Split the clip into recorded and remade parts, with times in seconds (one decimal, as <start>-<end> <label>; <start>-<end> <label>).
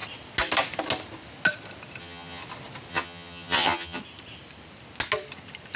0.0-2.0 recorded; 2.0-2.4 remade; 2.4-2.9 recorded; 2.9-4.0 remade; 4.0-5.8 recorded